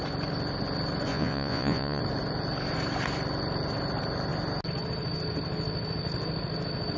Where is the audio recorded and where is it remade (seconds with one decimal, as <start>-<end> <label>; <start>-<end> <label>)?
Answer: 0.0-1.1 recorded; 1.1-2.0 remade; 2.0-7.0 recorded